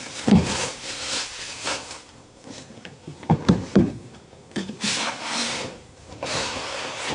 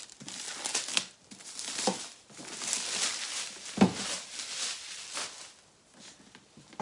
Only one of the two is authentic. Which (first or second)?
second